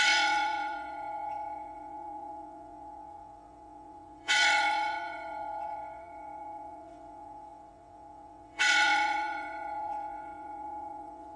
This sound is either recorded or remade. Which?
remade